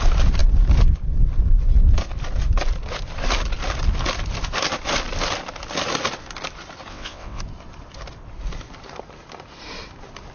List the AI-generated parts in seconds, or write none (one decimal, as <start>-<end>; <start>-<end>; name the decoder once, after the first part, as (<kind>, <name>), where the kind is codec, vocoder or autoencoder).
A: 6.9-7.4 (vocoder, WaveNeXt)